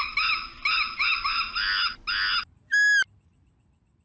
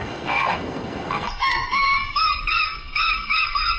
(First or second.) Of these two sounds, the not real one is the second